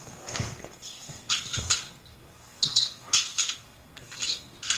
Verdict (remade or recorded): remade